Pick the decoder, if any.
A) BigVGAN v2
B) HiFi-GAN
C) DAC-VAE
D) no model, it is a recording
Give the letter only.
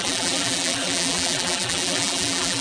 A